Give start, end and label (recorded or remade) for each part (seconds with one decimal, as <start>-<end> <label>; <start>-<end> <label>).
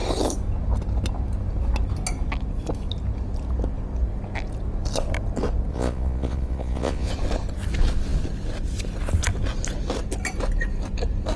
0.0-5.7 recorded; 5.7-7.1 remade; 7.1-11.4 recorded